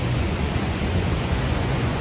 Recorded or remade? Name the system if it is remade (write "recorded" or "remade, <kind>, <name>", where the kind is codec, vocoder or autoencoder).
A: remade, vocoder, Vocos